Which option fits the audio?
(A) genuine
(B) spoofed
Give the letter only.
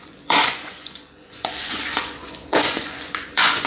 B